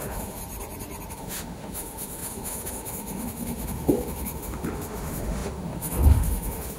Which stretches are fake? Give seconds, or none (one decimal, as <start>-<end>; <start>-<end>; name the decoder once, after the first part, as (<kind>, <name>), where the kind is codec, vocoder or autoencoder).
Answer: 0.0-0.4 (autoencoder, DAC-VAE); 1.1-6.8